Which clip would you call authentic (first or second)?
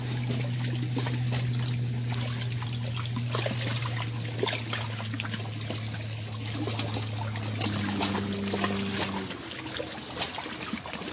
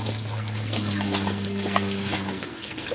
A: first